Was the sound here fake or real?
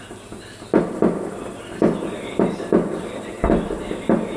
real